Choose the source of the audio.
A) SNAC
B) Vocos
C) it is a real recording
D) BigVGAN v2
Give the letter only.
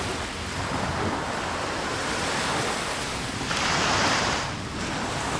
C